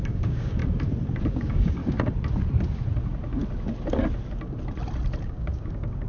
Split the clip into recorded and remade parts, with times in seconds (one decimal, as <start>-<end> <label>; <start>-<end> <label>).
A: 0.0-0.6 remade; 0.6-1.3 recorded; 1.3-1.8 remade; 1.8-5.2 recorded; 5.2-6.1 remade